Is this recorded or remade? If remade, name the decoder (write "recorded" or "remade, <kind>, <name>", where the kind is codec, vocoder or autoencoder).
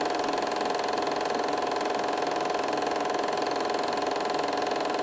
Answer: recorded